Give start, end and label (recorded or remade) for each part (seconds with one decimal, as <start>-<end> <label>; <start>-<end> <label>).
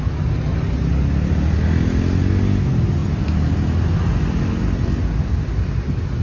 0.0-6.2 recorded